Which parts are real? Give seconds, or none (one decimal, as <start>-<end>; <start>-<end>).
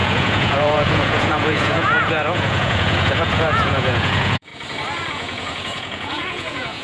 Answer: 4.5-5.1